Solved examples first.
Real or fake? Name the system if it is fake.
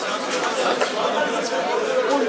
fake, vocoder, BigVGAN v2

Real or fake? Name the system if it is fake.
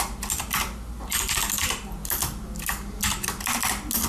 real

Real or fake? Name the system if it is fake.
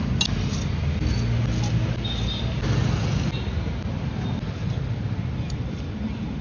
real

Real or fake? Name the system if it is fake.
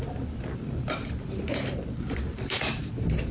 fake, vocoder, BigVGAN v2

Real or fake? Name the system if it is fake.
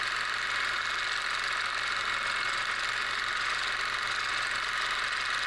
real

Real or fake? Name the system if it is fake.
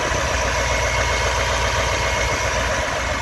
real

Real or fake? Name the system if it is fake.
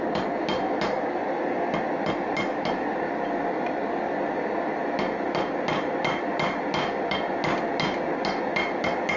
real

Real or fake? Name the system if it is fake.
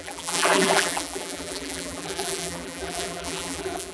fake, vocoder, BigVGAN v2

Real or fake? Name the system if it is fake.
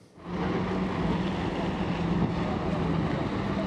real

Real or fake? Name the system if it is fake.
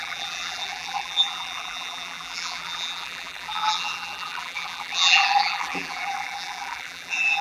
fake, vocoder, BigVGAN v2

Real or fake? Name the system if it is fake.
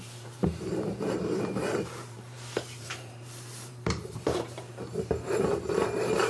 fake, vocoder, BigVGAN v2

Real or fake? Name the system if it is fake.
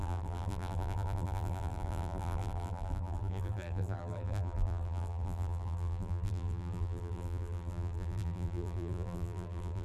fake, vocoder, BigVGAN v2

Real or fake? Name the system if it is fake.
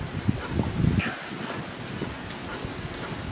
real